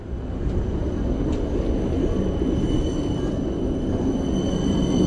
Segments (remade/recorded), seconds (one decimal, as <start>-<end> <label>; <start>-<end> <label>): 0.0-5.1 recorded